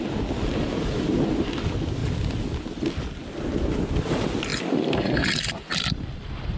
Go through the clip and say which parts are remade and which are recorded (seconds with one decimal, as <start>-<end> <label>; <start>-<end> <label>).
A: 0.0-6.6 recorded